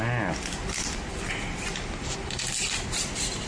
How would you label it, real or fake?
real